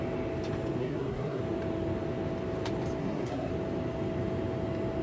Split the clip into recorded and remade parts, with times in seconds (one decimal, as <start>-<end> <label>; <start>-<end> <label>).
0.0-0.8 recorded; 0.8-1.4 remade; 1.4-3.0 recorded; 3.0-3.5 remade; 3.5-5.0 recorded